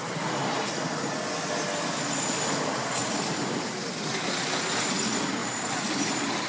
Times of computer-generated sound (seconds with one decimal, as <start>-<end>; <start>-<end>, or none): 3.0-4.1; 5.4-6.5